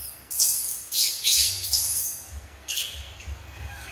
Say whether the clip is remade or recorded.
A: remade